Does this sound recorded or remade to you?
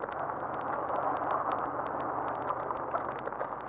recorded